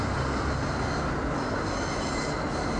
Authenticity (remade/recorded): recorded